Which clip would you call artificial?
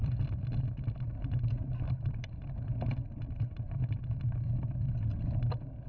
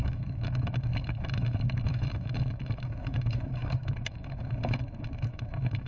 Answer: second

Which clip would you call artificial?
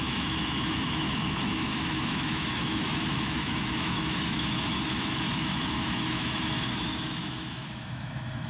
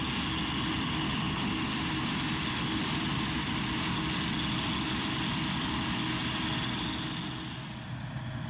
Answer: first